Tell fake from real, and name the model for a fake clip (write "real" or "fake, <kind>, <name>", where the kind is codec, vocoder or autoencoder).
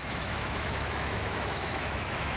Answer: fake, autoencoder, DAC-VAE